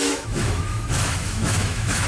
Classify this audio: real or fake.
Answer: fake